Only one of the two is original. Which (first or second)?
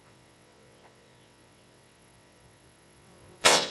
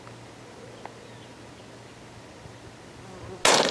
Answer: second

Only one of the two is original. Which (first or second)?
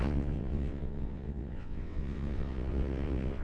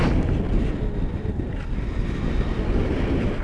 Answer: second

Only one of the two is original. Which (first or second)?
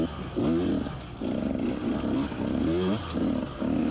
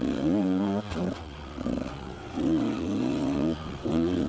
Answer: first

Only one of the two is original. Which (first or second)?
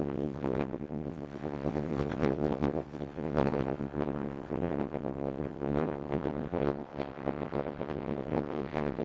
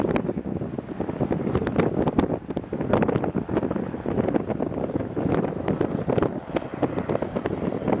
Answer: second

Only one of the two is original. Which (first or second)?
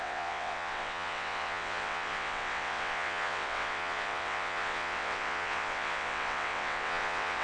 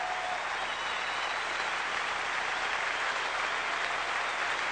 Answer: second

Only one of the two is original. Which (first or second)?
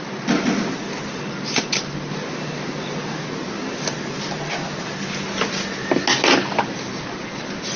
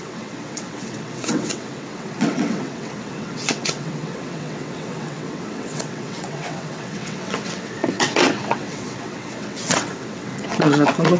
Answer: first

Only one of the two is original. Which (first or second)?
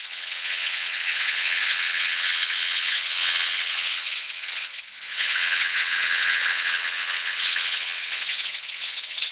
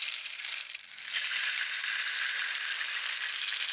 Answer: second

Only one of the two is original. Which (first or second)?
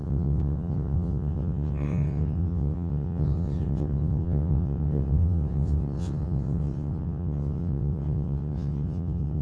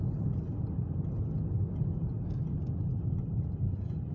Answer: second